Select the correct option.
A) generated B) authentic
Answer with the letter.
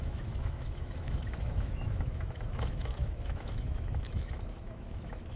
A